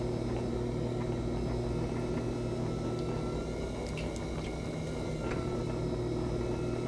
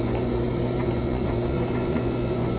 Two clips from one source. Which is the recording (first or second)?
first